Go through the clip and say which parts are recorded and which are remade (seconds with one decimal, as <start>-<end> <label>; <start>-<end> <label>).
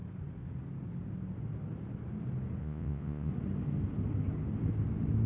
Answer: 0.0-2.6 recorded; 2.6-3.3 remade; 3.3-5.3 recorded